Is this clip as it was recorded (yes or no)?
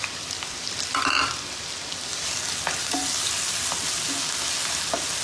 yes